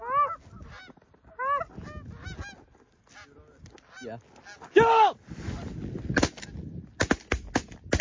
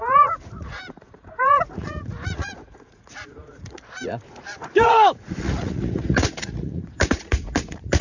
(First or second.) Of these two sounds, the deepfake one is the second